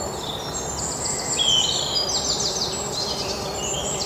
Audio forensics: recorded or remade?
recorded